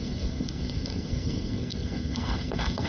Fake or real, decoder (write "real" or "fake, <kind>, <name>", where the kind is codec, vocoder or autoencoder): fake, codec, SNAC